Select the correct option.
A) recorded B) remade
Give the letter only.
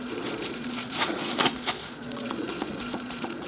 B